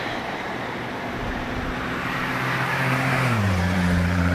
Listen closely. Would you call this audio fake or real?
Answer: fake